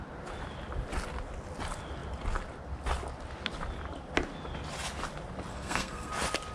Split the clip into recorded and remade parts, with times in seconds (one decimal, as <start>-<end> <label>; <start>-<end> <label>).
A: 0.0-5.5 recorded; 5.5-6.1 remade; 6.1-6.5 recorded